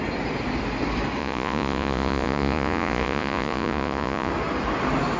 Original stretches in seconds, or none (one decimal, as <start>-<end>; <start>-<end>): 0.0-1.2; 4.3-5.2